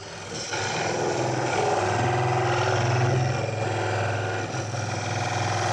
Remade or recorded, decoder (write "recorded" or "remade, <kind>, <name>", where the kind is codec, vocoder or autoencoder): recorded